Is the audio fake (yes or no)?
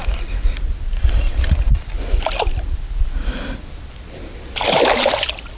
no